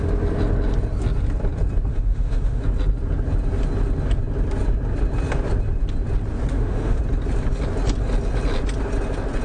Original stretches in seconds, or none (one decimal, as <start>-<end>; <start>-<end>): 0.0-1.9; 2.6-6.5; 7.0-9.4